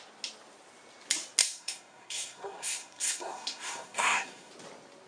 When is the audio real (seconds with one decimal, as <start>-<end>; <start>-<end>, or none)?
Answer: 0.0-1.4; 4.5-5.1